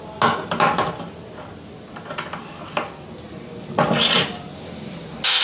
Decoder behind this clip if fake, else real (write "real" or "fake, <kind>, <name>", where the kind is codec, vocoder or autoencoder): real